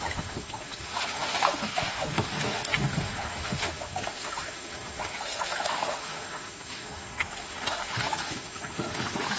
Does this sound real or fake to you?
fake